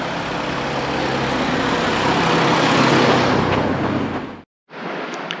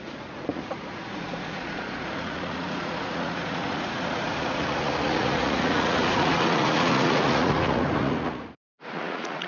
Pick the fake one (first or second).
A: second